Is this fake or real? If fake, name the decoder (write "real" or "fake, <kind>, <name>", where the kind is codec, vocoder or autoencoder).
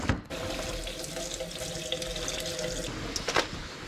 real